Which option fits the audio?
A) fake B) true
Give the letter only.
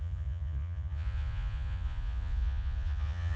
A